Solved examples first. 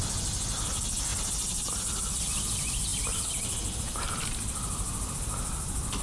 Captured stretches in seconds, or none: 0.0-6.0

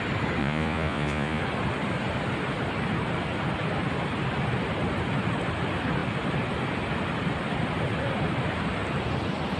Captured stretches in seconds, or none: 0.0-0.4; 1.4-9.6

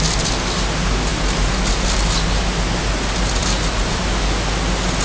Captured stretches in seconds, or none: 0.0-5.0

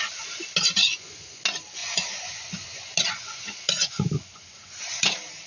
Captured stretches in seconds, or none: 0.0-0.9; 1.4-1.8; 5.1-5.5

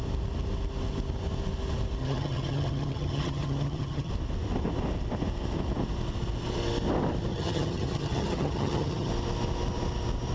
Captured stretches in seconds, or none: 0.0-2.0; 4.1-7.3; 9.1-10.3